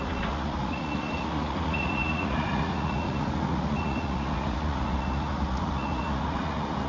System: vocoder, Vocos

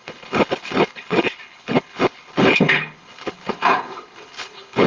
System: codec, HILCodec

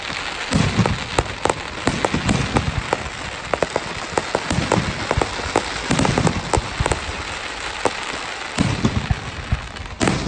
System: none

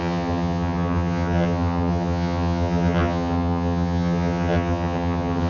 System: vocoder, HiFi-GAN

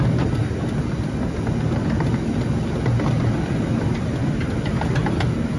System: none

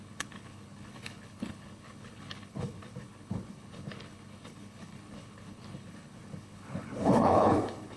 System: codec, HILCodec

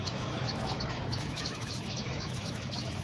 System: autoencoder, DAC-VAE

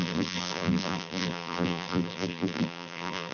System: vocoder, BigVGAN v2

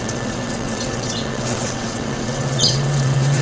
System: vocoder, WaveNeXt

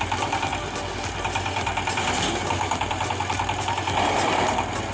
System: none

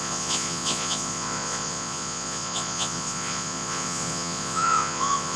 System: vocoder, Vocos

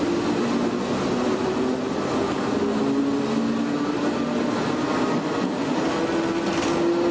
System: none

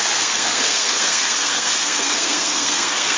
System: codec, SNAC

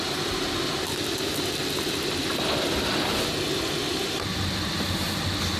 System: none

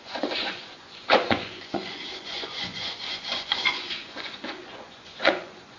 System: vocoder, Vocos